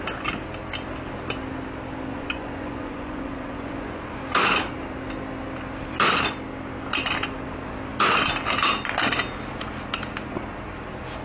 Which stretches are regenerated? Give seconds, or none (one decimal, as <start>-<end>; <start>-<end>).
2.1-4.2